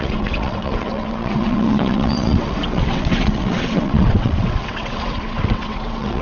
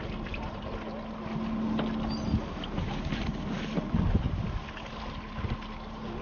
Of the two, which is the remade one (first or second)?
first